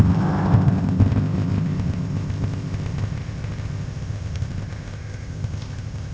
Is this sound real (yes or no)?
no